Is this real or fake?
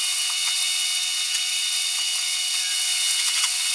fake